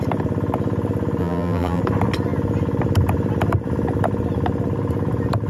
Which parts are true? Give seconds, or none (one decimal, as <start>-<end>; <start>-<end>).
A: 0.0-1.2; 1.8-5.5